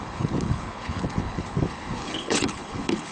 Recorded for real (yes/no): no